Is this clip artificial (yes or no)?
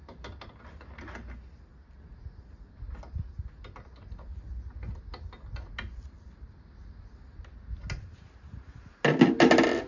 no